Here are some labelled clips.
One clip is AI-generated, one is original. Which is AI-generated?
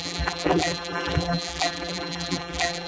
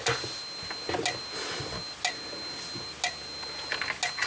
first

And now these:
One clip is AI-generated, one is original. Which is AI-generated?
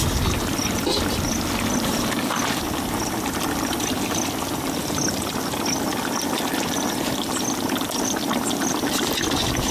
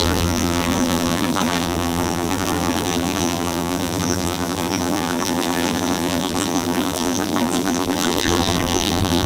second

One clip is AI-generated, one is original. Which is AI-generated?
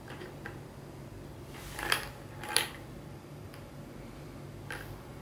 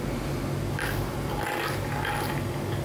first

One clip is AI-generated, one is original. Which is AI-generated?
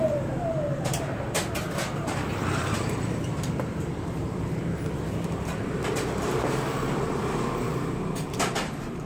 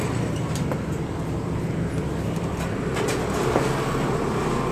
first